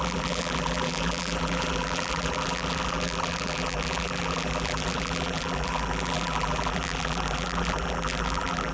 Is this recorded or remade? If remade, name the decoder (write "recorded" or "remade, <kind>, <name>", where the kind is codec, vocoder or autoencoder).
remade, vocoder, BigVGAN v2